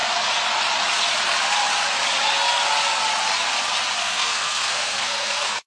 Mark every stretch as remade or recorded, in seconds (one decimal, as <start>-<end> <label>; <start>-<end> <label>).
0.0-4.0 recorded; 4.0-5.7 remade